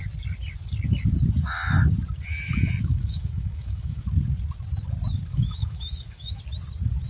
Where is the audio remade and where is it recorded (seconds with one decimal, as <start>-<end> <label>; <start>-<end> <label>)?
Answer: 0.0-2.3 recorded; 2.3-4.0 remade; 4.0-5.3 recorded; 5.3-6.4 remade; 6.4-7.1 recorded